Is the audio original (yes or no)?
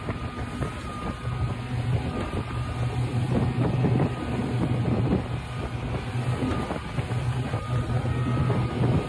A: yes